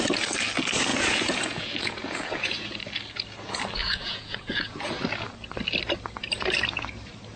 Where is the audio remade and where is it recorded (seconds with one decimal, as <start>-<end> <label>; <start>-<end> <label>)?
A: 0.0-0.9 recorded; 0.9-2.8 remade; 2.8-3.8 recorded; 3.8-4.9 remade; 4.9-7.4 recorded

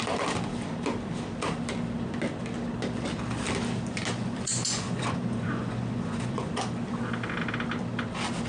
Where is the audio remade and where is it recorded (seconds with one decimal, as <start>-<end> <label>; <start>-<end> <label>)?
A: 0.0-4.1 recorded; 4.1-6.5 remade; 6.5-8.5 recorded